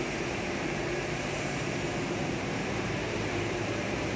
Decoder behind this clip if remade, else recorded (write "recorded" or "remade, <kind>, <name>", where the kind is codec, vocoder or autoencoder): remade, vocoder, BigVGAN v2